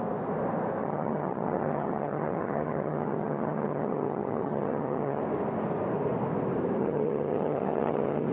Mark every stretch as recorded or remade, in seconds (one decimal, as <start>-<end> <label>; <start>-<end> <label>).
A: 0.0-0.8 recorded; 0.8-5.2 remade; 5.2-6.8 recorded; 6.8-8.3 remade